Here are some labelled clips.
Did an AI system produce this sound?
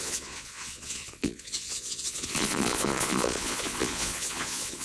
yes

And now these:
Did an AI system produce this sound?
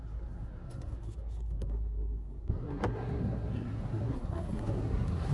yes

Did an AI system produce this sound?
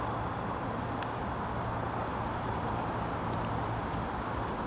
no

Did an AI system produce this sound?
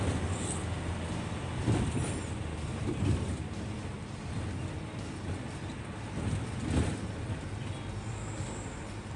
no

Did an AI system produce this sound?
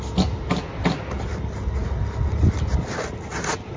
no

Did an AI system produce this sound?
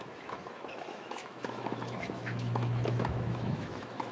yes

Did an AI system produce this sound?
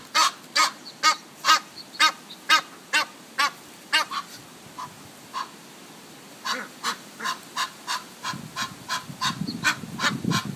no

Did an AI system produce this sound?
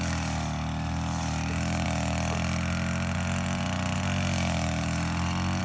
no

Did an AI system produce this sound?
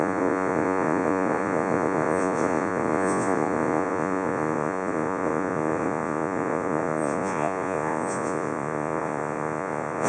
yes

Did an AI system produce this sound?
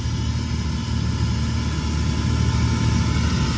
no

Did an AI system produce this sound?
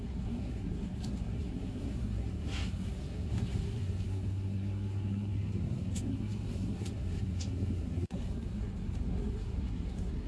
yes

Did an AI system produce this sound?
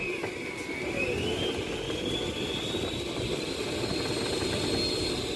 no